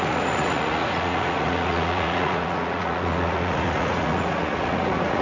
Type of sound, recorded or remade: remade